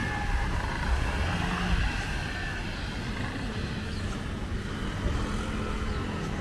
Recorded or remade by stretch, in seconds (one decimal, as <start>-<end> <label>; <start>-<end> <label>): 0.0-6.4 recorded

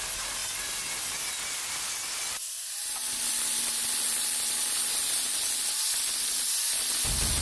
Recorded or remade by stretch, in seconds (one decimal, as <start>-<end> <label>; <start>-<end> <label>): 0.0-7.4 recorded